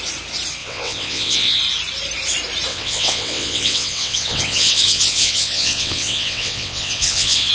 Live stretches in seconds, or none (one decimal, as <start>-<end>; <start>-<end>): 0.0-0.6; 1.6-2.7